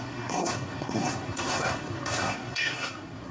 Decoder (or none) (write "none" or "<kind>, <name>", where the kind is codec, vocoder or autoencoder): codec, SNAC